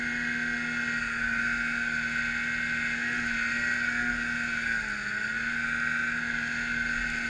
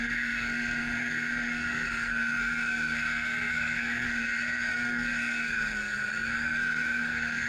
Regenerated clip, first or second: second